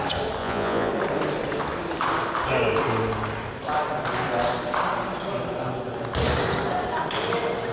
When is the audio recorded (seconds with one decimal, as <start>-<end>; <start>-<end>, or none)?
0.0-0.4; 0.9-7.7